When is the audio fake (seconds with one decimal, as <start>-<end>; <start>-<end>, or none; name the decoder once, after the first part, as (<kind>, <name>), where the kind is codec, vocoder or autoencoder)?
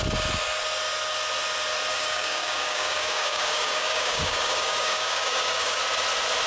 1.9-5.8 (codec, DAC)